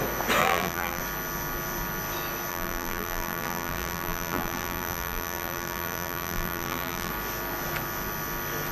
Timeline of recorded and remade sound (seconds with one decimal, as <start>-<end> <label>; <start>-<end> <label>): 0.0-0.4 recorded; 0.4-1.0 remade; 1.0-2.5 recorded; 2.5-7.1 remade; 7.1-8.7 recorded